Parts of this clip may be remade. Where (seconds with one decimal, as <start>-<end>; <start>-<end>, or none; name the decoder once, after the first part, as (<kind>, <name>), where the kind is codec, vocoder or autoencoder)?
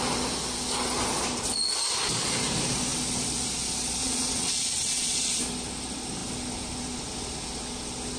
4.0-5.4 (vocoder, Vocos)